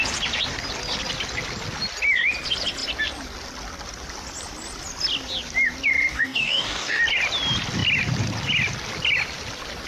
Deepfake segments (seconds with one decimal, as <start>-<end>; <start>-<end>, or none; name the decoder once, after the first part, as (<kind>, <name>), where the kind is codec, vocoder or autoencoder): 6.1-7.0 (codec, DAC)